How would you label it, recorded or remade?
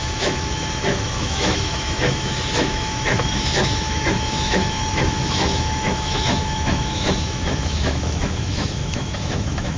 remade